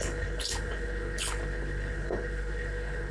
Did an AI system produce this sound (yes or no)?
yes